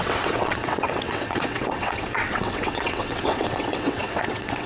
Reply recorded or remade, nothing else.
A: remade